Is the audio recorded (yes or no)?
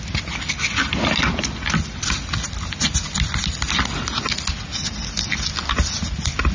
yes